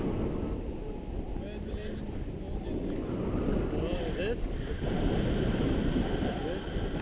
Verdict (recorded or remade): recorded